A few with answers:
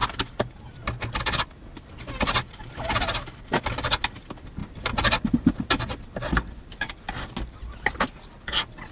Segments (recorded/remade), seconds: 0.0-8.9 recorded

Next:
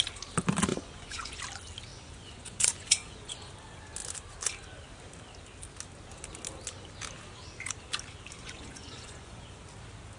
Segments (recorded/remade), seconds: 0.0-0.7 recorded; 0.7-1.4 remade; 1.4-1.9 recorded; 1.9-3.5 remade; 3.5-8.4 recorded; 8.4-9.6 remade; 9.6-10.2 recorded

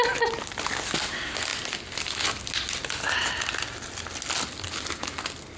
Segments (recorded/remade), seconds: 0.0-5.6 recorded

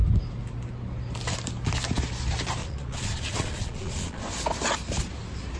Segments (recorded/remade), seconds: 0.0-2.6 recorded; 2.6-4.2 remade; 4.2-5.6 recorded

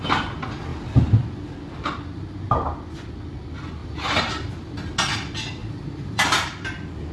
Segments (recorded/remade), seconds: 0.0-3.8 recorded; 3.8-4.5 remade; 4.5-5.6 recorded; 5.6-6.5 remade; 6.5-7.1 recorded